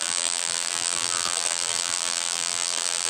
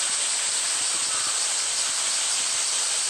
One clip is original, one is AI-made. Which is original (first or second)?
second